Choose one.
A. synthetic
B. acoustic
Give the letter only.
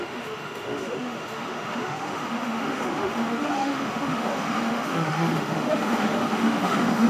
A